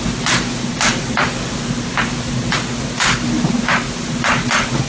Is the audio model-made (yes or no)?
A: no